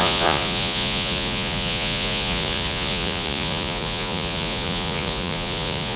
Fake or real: fake